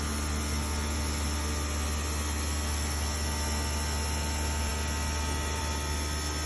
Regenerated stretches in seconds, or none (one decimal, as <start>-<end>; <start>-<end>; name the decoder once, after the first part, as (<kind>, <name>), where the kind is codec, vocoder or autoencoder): none